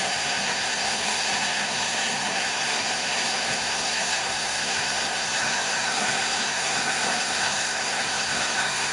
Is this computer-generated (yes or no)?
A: yes